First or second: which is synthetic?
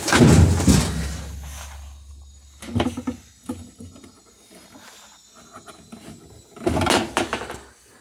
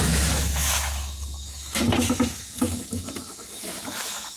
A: second